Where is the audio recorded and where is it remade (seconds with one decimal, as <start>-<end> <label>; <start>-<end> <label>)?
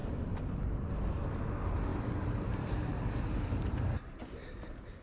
0.0-5.0 recorded